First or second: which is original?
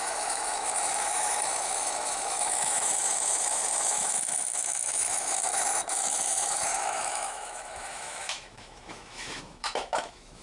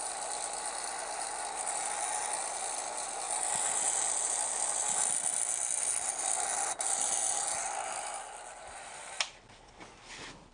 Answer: second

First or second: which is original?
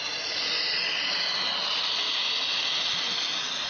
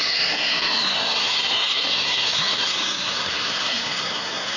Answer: first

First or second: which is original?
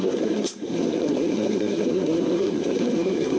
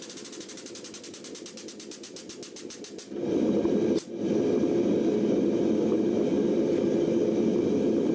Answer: second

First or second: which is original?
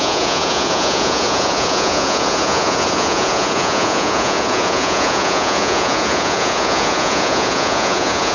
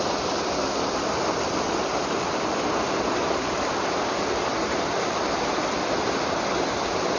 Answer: second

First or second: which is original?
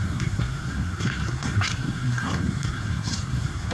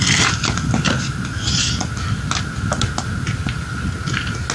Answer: second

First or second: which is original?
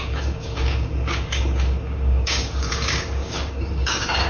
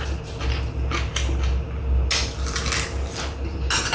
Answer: second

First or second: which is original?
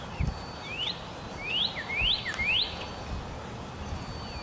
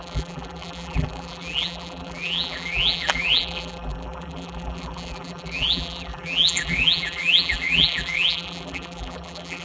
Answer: first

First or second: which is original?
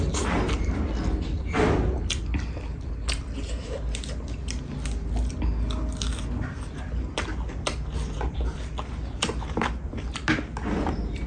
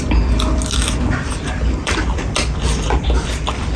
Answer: first